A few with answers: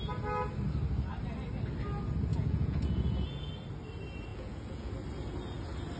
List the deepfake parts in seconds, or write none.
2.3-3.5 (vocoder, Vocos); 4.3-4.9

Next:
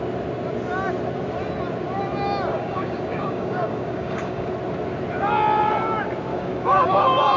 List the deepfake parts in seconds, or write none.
2.5-4.5 (codec, DAC); 6.3-7.0

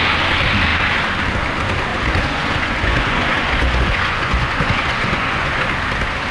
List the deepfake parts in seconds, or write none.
1.9-5.7 (vocoder, Vocos)

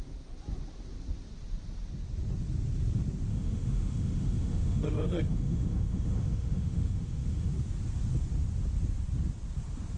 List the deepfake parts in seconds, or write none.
3.3-7.5 (autoencoder, DAC-VAE)

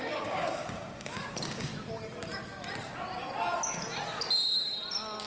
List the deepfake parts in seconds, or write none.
0.0-1.7 (codec, DAC)

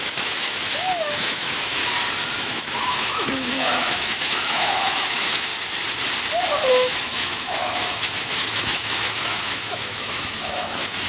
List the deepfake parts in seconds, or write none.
0.0-1.8 (autoencoder, DAC-VAE); 2.4-5.5; 6.7-11.1

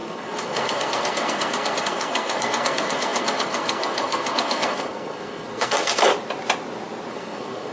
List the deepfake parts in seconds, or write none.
0.0-6.1 (codec, SNAC); 7.1-7.7

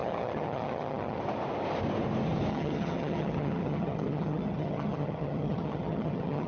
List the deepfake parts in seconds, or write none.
0.0-1.2 (vocoder, HiFi-GAN); 2.5-6.5